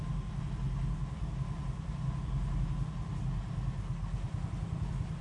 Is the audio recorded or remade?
recorded